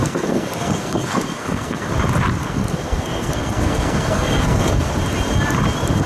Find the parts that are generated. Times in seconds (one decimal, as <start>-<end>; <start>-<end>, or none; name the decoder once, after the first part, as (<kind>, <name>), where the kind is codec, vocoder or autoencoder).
0.0-1.9 (codec, SNAC); 2.4-4.9